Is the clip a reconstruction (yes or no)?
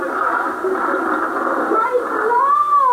no